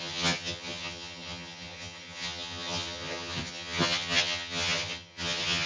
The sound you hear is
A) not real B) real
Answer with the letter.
A